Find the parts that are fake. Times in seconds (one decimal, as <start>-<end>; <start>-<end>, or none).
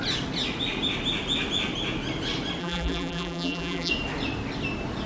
2.6-3.9